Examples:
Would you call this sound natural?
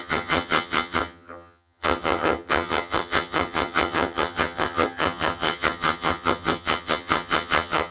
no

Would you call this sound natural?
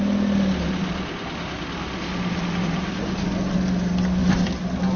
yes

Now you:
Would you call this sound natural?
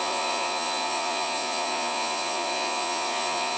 no